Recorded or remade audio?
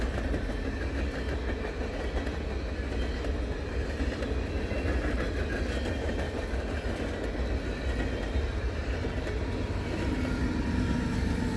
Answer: recorded